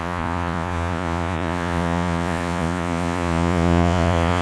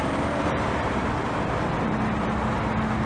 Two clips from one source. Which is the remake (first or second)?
first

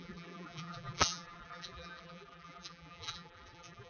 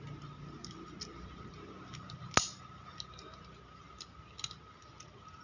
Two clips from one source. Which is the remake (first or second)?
first